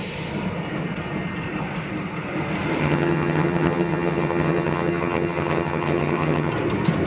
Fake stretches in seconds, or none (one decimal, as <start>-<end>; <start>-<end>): 2.8-6.5